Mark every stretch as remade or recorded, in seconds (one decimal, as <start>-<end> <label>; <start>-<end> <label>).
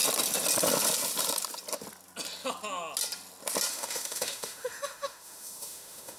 0.0-3.7 recorded; 3.7-6.2 remade